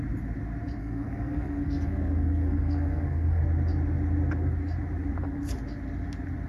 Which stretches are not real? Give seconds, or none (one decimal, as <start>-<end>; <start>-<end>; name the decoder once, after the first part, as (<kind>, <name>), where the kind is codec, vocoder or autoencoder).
0.8-3.4 (codec, SNAC)